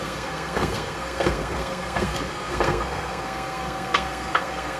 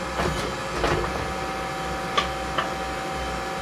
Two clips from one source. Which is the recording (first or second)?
second